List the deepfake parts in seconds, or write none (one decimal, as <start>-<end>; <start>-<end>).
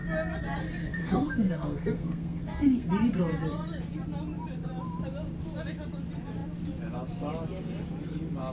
0.8-2.9